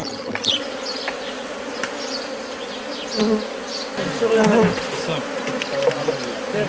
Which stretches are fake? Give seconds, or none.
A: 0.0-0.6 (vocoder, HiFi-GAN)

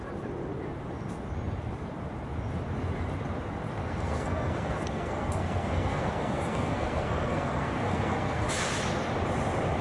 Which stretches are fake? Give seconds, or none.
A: 3.8-8.5 (codec, SNAC)

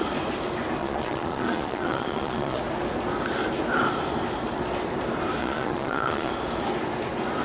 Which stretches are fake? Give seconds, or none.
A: 0.8-2.6 (vocoder, Vocos); 5.4-6.3

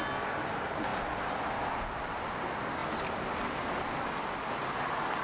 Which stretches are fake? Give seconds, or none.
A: none